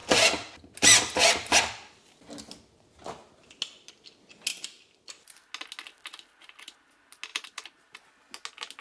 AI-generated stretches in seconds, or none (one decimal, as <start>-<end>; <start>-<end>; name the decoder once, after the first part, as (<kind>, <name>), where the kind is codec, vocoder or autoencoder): 4.5-5.3 (vocoder, BigVGAN v2); 7.3-8.1